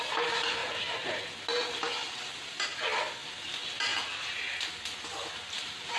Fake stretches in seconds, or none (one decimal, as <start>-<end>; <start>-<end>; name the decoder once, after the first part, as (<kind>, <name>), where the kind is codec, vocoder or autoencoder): 0.0-0.6 (vocoder, BigVGAN v2); 1.9-6.0